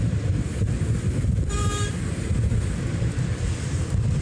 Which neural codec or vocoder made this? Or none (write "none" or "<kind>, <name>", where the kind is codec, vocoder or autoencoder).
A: vocoder, BigVGAN v2